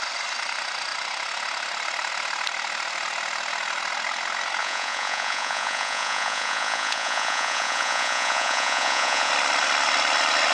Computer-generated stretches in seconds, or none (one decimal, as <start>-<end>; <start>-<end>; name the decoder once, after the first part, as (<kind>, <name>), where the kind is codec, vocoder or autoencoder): 4.6-9.3 (vocoder, Vocos)